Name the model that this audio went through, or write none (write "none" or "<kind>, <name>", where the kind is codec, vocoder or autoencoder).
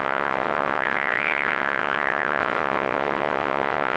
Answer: vocoder, WaveNeXt